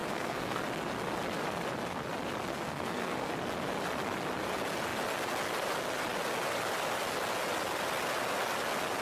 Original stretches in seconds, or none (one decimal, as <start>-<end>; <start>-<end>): 0.6-2.5; 3.3-9.0